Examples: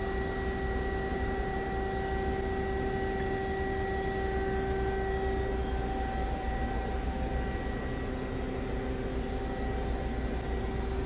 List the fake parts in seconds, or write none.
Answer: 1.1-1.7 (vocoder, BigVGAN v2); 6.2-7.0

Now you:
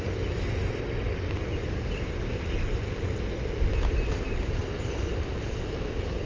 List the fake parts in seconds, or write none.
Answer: 4.6-5.2 (vocoder, BigVGAN v2)

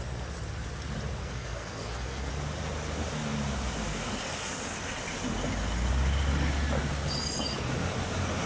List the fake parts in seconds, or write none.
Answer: 1.2-2.3 (codec, SNAC)